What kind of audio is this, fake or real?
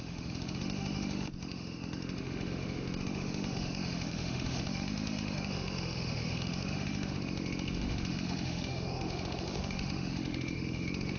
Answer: fake